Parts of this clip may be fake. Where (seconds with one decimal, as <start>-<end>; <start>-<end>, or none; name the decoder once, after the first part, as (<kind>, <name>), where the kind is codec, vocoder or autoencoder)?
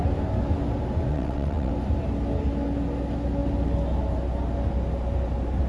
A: 1.1-1.7 (vocoder, WaveNeXt)